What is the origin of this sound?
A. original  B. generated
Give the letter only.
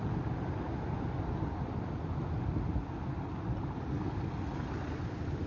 A